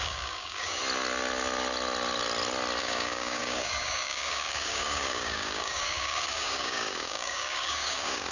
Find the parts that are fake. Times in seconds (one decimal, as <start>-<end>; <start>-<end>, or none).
0.0-0.8; 2.8-8.3